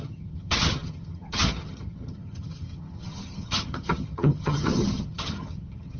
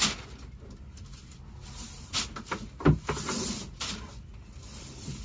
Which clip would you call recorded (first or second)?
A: second